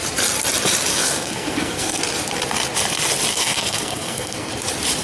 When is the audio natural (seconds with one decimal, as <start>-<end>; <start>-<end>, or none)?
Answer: 0.0-0.9; 2.0-3.3; 4.5-5.0